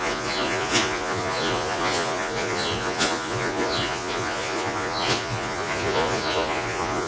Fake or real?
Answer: fake